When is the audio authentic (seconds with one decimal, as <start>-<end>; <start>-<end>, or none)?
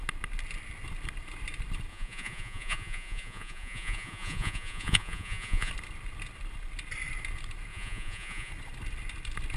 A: 0.0-1.9; 5.7-7.7; 8.5-9.6